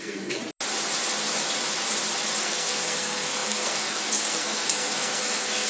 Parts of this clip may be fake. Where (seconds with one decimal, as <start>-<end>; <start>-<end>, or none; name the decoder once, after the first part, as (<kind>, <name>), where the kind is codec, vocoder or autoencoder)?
0.0-0.4 (codec, SNAC); 2.4-5.7